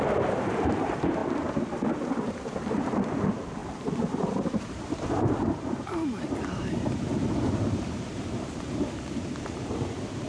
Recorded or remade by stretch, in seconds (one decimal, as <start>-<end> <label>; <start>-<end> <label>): 0.0-10.3 remade